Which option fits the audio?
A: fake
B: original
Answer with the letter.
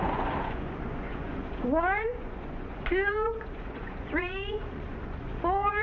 A